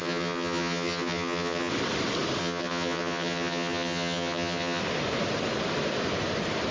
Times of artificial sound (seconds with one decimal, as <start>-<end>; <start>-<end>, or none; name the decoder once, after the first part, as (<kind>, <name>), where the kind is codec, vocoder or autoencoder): 0.0-1.7 (vocoder, HiFi-GAN); 2.4-4.8